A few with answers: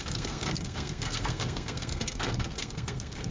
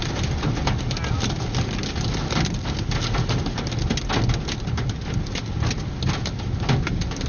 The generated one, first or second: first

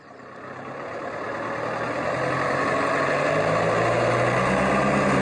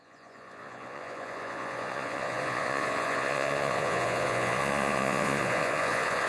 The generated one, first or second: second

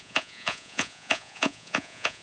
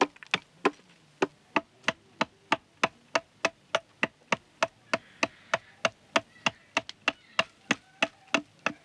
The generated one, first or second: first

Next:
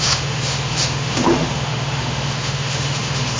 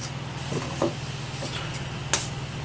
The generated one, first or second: first